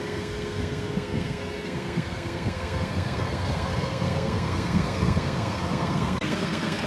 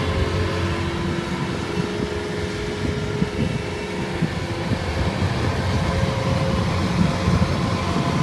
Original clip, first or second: second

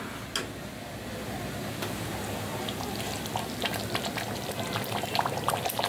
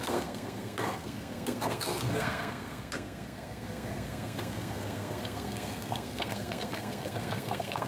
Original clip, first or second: first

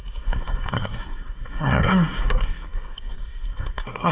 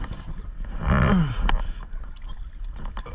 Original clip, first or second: second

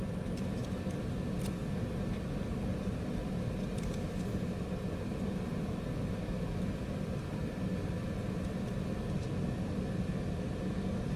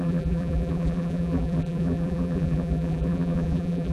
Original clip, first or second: first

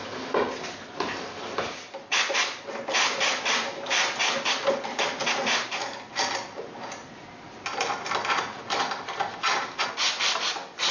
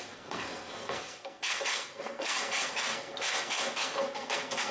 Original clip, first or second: first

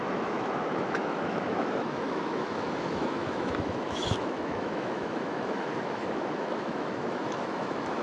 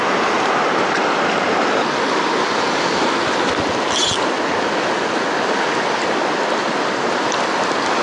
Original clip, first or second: second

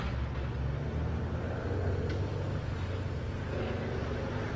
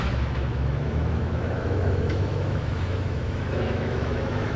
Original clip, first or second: first